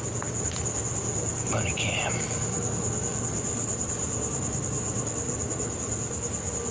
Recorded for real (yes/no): yes